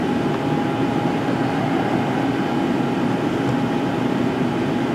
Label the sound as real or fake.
real